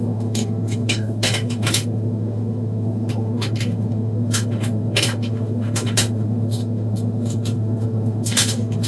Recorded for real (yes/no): no